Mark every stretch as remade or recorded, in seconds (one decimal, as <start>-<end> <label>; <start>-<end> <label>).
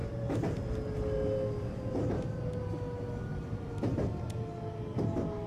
0.0-3.3 recorded; 3.3-3.9 remade; 3.9-5.5 recorded